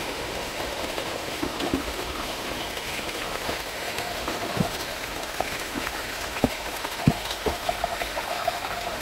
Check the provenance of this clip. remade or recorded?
remade